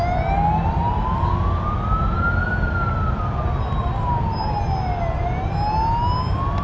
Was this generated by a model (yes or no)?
no